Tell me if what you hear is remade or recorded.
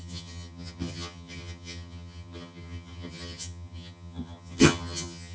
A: remade